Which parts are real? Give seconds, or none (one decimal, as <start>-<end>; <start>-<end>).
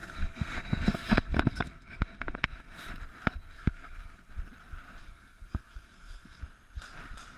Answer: 2.9-3.4; 4.3-5.0; 6.4-7.4